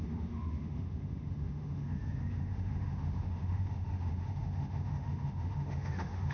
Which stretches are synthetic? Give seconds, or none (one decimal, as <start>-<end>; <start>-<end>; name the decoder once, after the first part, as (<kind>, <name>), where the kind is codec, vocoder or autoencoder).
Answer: 0.0-6.3 (autoencoder, DAC-VAE)